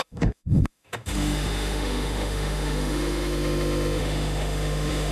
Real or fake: fake